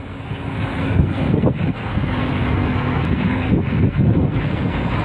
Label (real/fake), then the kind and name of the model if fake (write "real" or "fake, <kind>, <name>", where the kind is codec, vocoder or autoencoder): fake, codec, SNAC